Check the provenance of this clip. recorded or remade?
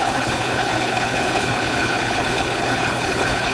remade